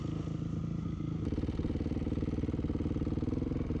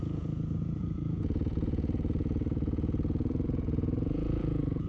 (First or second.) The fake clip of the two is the second